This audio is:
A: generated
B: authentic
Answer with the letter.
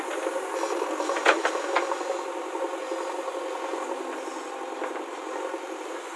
B